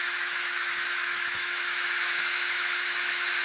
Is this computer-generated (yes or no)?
yes